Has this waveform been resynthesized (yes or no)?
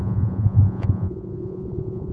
yes